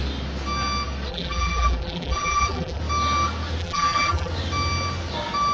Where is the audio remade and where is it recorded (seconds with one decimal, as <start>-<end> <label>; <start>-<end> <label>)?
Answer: 0.0-1.1 recorded; 1.1-2.8 remade; 2.8-3.6 recorded; 3.6-4.3 remade; 4.3-5.5 recorded